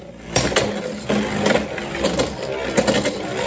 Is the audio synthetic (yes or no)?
no